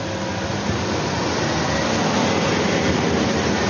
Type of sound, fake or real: real